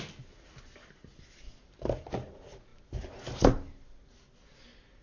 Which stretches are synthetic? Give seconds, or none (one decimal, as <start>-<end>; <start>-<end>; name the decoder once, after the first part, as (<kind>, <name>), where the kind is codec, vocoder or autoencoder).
none